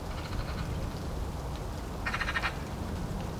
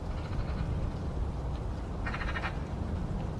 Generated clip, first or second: second